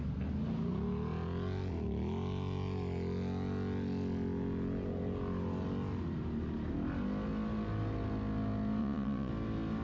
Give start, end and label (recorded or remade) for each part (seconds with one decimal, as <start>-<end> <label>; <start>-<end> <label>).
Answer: 0.0-8.8 recorded; 8.8-9.3 remade; 9.3-9.8 recorded